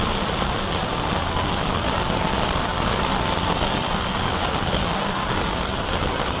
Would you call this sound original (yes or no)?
yes